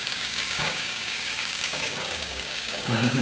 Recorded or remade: remade